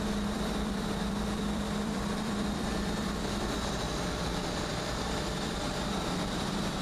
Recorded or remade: remade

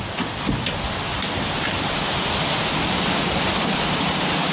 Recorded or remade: recorded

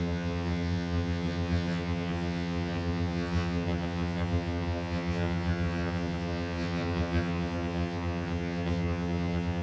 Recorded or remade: remade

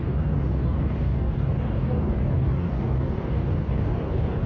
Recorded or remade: remade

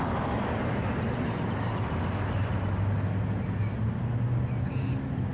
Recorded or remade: recorded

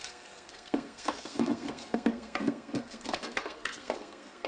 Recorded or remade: remade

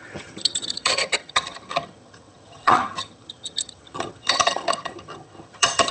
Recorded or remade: remade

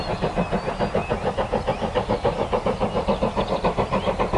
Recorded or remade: recorded